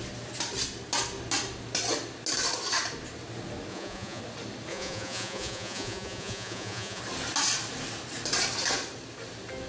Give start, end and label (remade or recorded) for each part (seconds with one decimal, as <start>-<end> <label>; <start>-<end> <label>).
0.0-3.7 recorded; 3.7-4.2 remade; 4.2-4.7 recorded; 4.7-7.0 remade; 7.0-9.7 recorded